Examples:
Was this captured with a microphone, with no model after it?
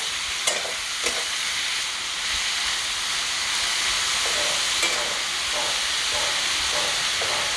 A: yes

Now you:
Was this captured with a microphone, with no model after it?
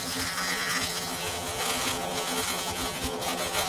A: no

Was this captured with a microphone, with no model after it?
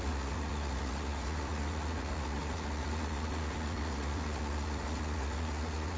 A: no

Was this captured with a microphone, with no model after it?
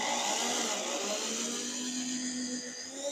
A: yes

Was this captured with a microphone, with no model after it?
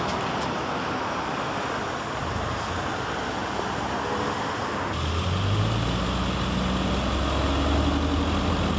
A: yes